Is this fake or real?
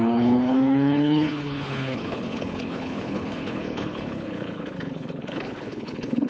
fake